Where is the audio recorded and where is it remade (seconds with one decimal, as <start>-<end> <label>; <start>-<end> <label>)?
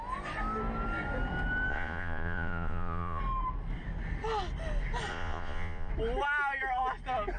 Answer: 0.0-1.7 recorded; 1.7-3.2 remade; 3.2-5.1 recorded; 5.1-5.9 remade; 5.9-7.4 recorded